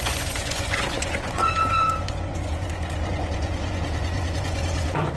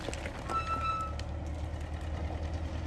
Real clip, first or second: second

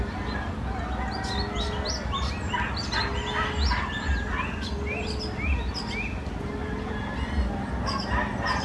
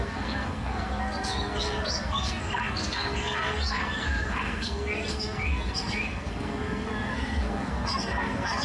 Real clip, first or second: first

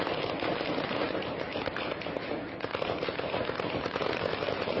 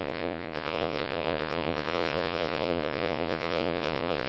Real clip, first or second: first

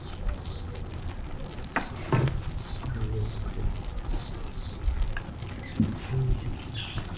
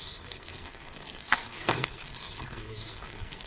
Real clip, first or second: first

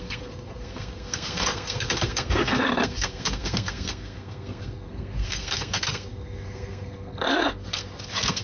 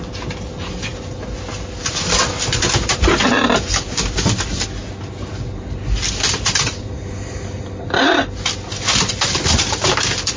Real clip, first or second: second